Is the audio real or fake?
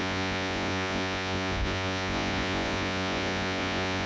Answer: fake